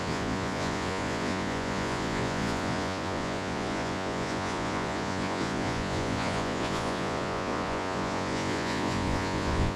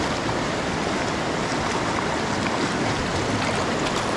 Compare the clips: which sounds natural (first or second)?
second